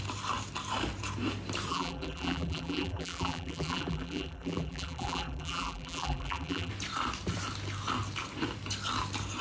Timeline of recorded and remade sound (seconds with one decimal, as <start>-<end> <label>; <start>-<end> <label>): 0.0-1.7 recorded; 1.7-6.7 remade; 6.7-9.4 recorded